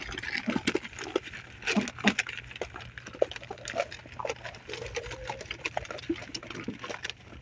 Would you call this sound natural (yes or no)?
yes